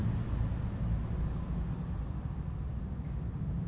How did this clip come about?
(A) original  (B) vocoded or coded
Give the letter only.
A